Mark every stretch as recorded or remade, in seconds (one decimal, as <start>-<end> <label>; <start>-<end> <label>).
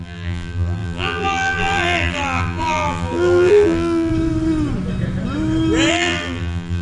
0.0-4.1 remade; 4.1-5.9 recorded; 5.9-6.8 remade